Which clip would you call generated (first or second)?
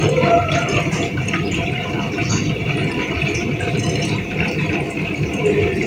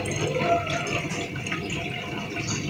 first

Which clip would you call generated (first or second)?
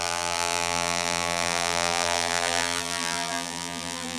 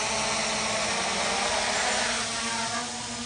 first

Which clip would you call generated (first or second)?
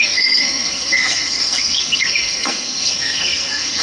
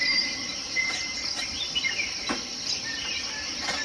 first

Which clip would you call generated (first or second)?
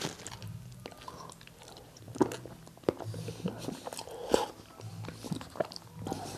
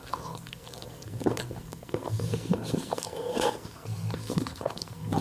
second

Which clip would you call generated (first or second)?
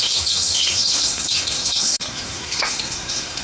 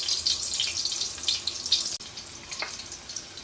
first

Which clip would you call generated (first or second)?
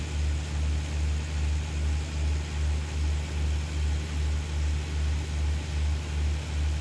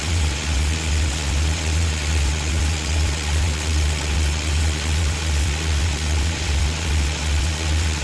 second